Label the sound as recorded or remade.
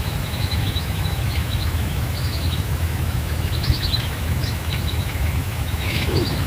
remade